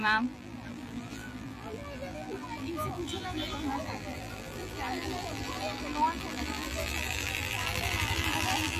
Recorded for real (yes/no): no